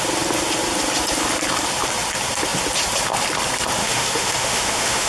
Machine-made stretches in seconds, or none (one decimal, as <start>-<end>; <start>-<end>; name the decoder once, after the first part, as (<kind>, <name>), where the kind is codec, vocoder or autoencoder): 3.8-5.1 (autoencoder, DAC-VAE)